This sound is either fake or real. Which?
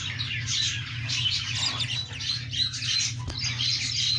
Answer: real